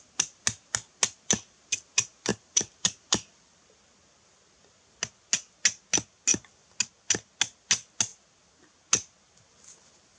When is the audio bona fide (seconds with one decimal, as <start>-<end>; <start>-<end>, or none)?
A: 0.0-2.3; 3.7-6.3; 6.8-10.2